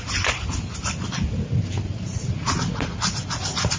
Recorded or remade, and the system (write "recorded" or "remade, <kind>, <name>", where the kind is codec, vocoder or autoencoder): recorded